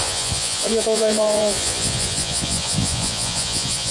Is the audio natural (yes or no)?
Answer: no